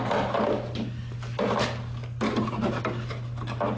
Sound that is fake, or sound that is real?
real